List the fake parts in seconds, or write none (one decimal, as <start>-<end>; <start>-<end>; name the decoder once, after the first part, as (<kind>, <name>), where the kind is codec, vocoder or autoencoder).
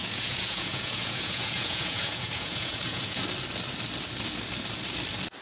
0.0-3.2 (vocoder, Vocos)